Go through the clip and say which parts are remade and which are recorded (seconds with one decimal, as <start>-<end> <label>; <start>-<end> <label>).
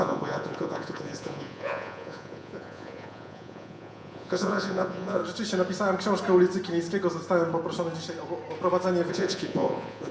0.0-5.2 remade; 5.2-9.1 recorded; 9.1-10.1 remade